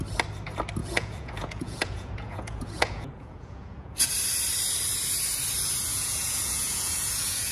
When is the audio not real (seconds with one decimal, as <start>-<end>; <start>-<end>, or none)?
0.8-4.1; 5.9-7.5